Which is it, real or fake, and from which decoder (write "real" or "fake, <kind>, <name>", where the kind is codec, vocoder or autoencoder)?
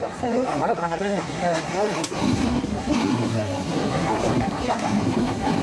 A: fake, codec, SNAC